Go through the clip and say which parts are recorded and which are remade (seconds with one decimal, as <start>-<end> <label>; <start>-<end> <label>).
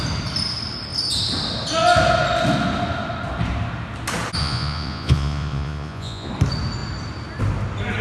0.0-4.4 recorded; 4.4-6.3 remade; 6.3-8.0 recorded